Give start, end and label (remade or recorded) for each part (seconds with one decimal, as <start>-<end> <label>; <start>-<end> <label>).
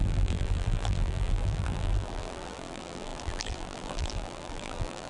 0.0-5.1 remade